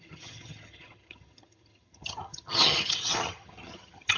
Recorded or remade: remade